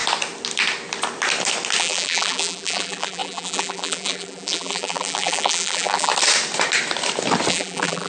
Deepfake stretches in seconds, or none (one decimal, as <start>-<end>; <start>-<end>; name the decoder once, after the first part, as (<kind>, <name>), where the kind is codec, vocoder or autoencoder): 1.8-6.1 (vocoder, BigVGAN v2); 7.5-8.1